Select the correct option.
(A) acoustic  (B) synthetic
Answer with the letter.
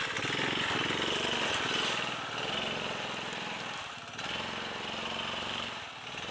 A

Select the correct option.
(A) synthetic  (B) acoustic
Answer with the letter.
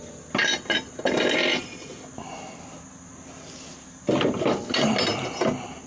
B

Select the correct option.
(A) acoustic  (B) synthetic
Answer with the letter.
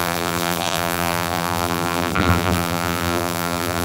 B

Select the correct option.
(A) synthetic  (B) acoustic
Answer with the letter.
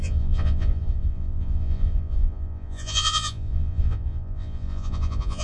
A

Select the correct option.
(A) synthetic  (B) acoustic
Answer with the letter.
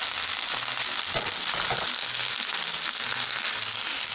B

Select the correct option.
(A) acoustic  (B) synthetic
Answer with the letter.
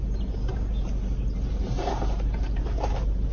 B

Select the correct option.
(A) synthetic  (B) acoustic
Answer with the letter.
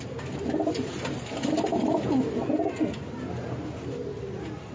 B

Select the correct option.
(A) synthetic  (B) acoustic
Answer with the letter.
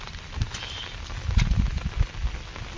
B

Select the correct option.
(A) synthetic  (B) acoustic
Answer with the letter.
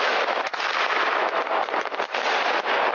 B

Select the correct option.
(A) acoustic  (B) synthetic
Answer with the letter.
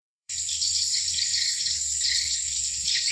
B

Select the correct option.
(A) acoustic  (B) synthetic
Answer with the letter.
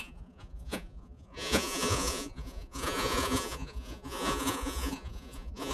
B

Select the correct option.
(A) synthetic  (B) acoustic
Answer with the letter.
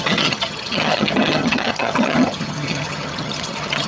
A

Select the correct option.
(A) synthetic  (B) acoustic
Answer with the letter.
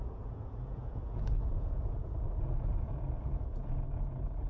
A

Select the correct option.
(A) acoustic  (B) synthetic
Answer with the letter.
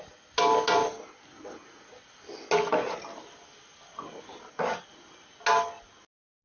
A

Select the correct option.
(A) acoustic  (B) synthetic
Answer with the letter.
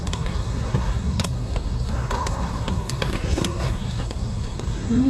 B